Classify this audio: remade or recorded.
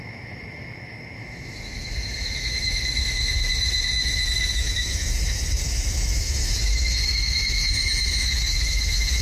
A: remade